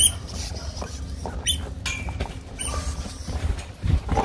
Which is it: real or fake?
real